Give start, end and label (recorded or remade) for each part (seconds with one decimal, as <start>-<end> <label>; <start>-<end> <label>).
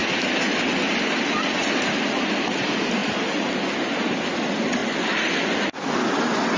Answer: 0.0-6.6 recorded